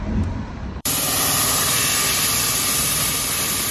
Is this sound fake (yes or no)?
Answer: yes